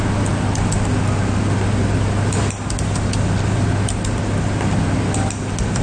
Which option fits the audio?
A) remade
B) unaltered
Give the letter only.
B